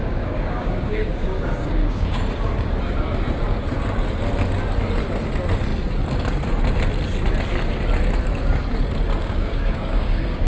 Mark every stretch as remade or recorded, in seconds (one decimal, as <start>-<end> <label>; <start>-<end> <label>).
0.0-2.2 remade; 2.2-9.2 recorded; 9.2-10.5 remade